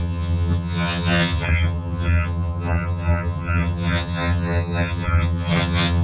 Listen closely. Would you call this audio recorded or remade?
remade